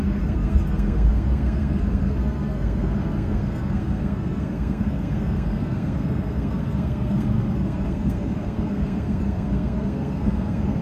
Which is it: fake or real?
fake